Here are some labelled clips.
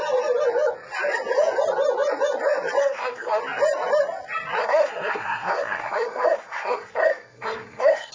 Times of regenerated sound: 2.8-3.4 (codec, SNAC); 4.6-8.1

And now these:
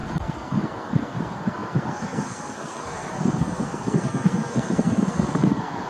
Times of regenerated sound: 0.0-5.9 (codec, SNAC)

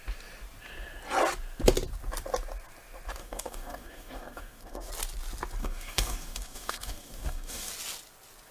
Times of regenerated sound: 3.2-4.9 (codec, DAC); 5.6-7.7